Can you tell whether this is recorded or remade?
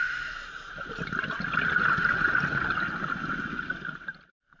recorded